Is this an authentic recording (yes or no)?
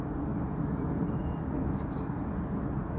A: yes